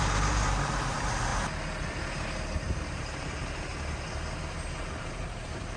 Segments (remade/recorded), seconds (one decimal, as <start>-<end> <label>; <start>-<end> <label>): 0.0-1.3 remade; 1.3-2.7 recorded; 2.7-3.7 remade; 3.7-4.8 recorded; 4.8-5.8 remade